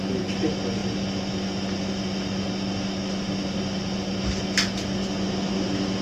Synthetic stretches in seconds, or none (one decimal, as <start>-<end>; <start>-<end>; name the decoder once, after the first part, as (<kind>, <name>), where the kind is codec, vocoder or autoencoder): none